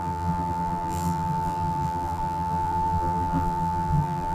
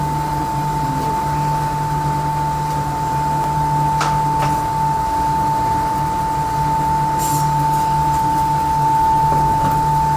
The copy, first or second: first